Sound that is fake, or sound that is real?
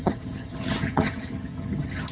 fake